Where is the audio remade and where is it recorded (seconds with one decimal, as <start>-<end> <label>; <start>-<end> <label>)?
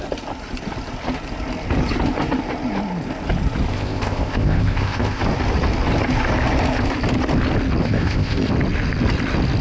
0.0-3.7 recorded; 3.7-5.2 remade; 5.2-7.8 recorded; 7.8-8.5 remade; 8.5-9.6 recorded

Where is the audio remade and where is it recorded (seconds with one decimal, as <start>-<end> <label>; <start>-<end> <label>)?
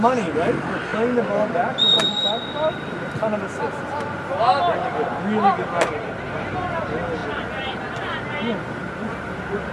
0.0-7.2 recorded; 7.2-7.8 remade; 7.8-8.8 recorded; 8.8-9.7 remade